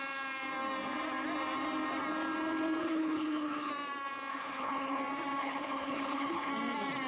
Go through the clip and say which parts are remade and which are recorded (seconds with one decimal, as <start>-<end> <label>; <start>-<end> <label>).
0.0-2.8 recorded; 2.8-3.7 remade; 3.7-4.3 recorded; 4.3-5.0 remade; 5.0-5.4 recorded; 5.4-6.5 remade; 6.5-7.1 recorded